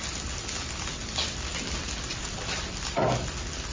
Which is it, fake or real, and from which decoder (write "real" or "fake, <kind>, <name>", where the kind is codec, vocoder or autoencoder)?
real